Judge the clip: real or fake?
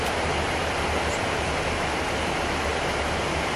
real